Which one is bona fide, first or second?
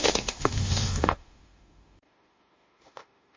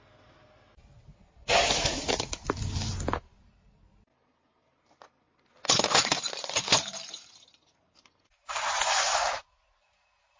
second